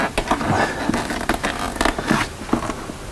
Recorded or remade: recorded